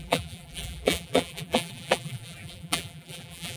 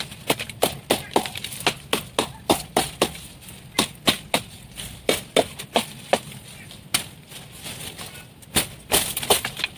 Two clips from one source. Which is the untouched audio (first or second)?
second